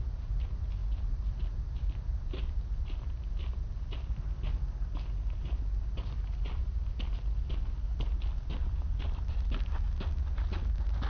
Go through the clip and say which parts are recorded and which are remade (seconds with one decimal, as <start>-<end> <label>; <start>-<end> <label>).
0.0-11.1 recorded